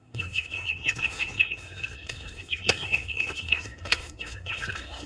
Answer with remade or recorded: remade